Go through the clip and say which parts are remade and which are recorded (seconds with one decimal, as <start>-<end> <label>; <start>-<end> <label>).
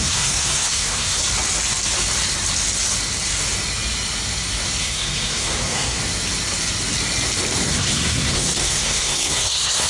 0.0-1.2 remade; 1.2-4.8 recorded; 4.8-6.0 remade; 6.0-7.7 recorded; 7.7-9.9 remade